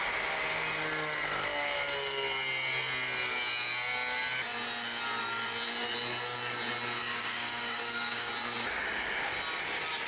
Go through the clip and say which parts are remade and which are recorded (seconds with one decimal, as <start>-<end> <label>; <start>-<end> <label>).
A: 0.0-7.0 recorded; 7.0-8.3 remade; 8.3-10.1 recorded